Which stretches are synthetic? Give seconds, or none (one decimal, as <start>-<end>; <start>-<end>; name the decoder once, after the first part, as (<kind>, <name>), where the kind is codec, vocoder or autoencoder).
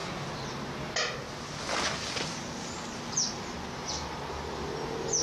none